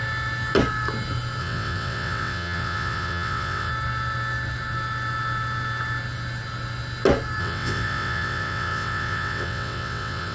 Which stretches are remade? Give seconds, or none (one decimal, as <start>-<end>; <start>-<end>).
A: 1.4-3.7; 7.4-10.3